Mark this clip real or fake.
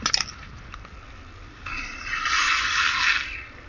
real